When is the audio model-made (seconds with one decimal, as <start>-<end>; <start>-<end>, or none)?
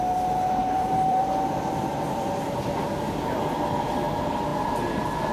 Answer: 0.6-3.7